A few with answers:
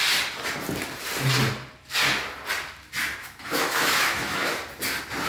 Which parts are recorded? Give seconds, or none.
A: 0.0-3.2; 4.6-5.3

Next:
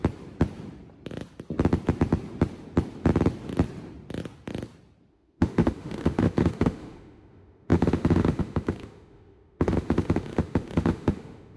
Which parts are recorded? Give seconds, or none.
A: 0.0-5.1

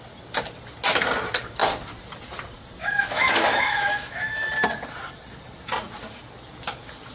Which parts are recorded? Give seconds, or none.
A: 0.0-2.8; 4.5-7.1